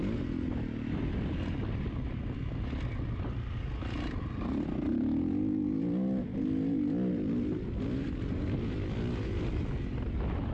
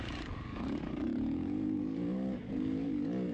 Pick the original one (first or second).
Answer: first